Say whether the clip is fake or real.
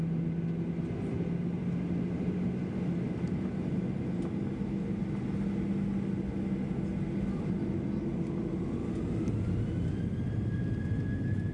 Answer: real